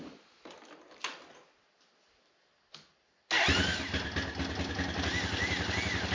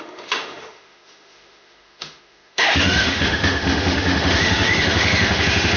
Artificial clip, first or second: second